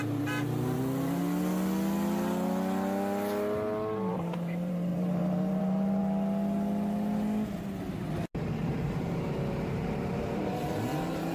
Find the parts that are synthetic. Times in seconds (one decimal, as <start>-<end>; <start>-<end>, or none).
0.0-1.2; 4.1-6.0; 8.4-11.3